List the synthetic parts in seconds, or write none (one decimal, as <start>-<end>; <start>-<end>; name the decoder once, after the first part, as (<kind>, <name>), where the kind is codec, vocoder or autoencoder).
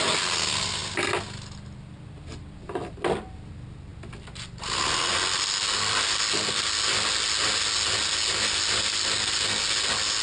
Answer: none